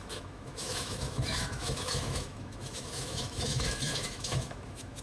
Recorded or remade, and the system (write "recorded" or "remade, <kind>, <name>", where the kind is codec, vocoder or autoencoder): remade, autoencoder, DAC-VAE